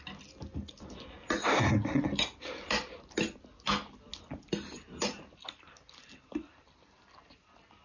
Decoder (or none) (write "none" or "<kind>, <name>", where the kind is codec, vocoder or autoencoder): none